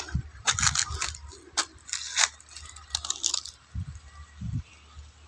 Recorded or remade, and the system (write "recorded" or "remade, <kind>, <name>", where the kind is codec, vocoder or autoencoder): recorded